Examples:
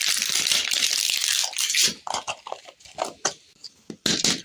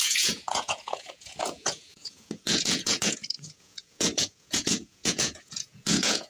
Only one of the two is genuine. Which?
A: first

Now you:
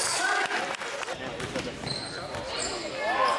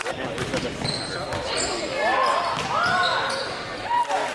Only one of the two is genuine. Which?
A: first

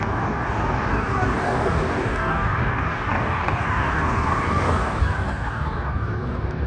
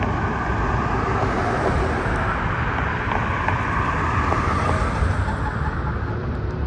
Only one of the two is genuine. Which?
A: second